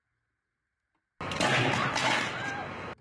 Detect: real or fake real